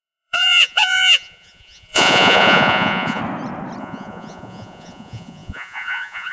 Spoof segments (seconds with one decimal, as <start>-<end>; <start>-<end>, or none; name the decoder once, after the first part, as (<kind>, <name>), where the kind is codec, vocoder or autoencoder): 0.0-3.2 (vocoder, Vocos); 3.8-6.3